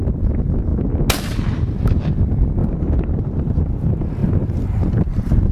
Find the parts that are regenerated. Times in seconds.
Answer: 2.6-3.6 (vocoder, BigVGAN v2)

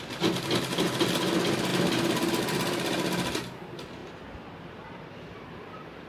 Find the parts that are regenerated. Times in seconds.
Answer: 4.0-5.5 (vocoder, BigVGAN v2)

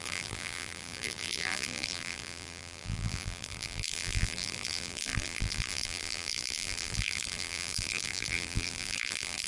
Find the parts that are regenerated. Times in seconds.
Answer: 0.0-9.5 (vocoder, BigVGAN v2)

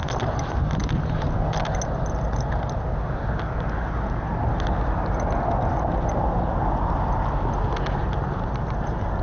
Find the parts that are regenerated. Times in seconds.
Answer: 8.0-9.2 (vocoder, BigVGAN v2)

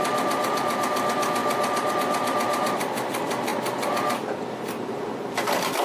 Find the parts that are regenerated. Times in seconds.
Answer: 0.0-3.5 (vocoder, BigVGAN v2); 4.5-5.8